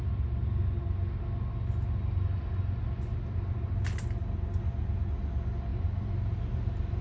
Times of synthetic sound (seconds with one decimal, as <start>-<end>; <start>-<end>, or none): 5.7-7.0